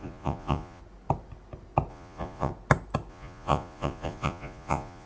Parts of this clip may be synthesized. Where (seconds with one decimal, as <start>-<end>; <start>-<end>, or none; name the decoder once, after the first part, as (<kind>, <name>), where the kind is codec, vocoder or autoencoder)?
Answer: 0.0-0.8 (vocoder, Vocos); 1.9-2.5; 3.1-5.1